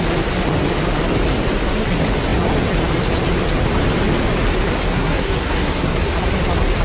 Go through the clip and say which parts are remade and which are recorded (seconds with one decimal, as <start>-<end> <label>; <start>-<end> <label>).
0.0-4.9 recorded; 4.9-6.1 remade; 6.1-6.8 recorded